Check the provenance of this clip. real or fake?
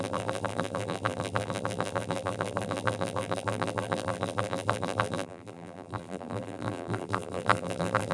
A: fake